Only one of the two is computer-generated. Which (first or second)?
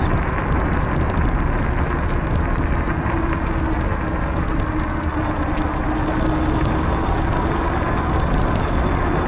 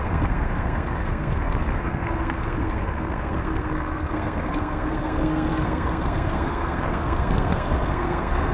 second